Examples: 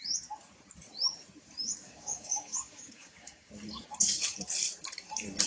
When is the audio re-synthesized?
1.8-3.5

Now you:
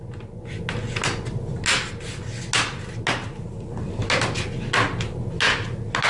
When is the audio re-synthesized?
none

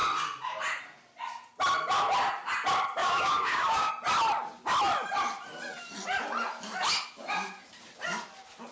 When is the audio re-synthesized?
3.0-3.9

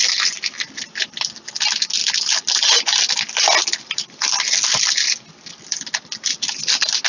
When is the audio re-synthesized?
none

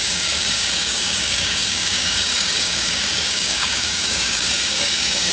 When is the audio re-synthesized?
0.0-5.3

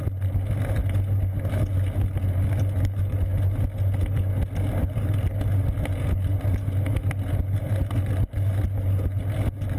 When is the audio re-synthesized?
none

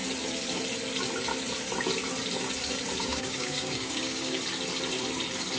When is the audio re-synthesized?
3.0-4.4